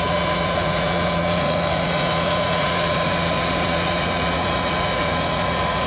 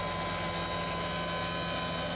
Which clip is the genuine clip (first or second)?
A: second